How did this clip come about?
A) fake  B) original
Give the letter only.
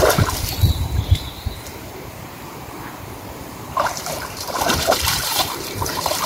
A